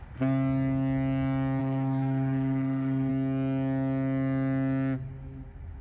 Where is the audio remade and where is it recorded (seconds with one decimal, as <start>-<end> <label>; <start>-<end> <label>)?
0.0-1.6 recorded; 1.6-3.1 remade; 3.1-5.8 recorded